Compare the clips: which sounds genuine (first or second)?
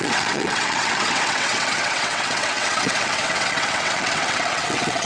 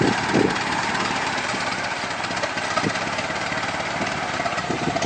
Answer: second